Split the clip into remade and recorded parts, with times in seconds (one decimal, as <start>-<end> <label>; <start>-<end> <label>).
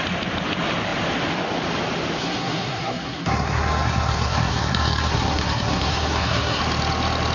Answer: 0.0-2.2 recorded; 2.2-6.6 remade; 6.6-7.3 recorded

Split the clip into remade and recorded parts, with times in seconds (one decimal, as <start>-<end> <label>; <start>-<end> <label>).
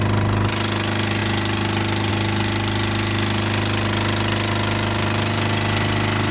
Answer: 0.0-6.3 recorded